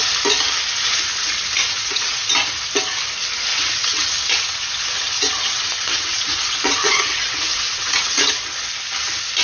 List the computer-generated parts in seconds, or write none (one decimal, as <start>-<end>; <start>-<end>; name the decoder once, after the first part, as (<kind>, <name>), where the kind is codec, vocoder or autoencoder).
1.5-2.3 (vocoder, WaveNeXt); 3.5-8.3